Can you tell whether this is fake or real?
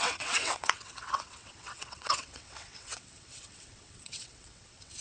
fake